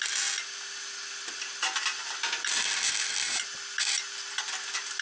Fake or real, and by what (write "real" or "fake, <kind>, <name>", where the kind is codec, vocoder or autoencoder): real